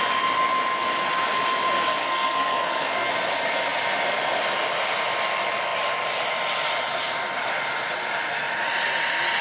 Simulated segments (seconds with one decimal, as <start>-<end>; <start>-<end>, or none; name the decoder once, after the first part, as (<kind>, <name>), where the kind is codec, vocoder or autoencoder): 2.0-3.1 (codec, SNAC)